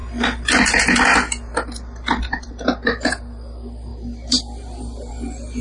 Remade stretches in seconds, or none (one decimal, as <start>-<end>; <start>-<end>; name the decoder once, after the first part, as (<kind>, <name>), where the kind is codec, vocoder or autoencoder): none